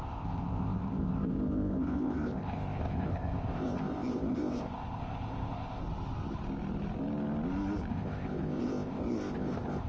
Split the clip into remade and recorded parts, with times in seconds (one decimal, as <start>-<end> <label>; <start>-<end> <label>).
0.0-5.8 remade; 5.8-7.9 recorded; 7.9-9.9 remade